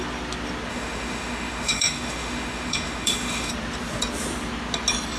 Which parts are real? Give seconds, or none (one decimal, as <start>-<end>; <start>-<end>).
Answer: 0.0-0.7; 3.5-5.2